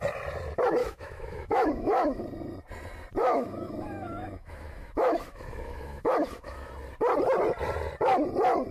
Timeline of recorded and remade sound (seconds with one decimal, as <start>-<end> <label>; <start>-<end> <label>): 0.0-0.8 recorded; 0.8-2.2 remade; 2.2-3.2 recorded; 3.2-6.7 remade; 6.7-8.7 recorded